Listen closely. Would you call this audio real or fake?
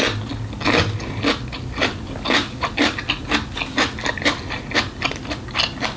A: real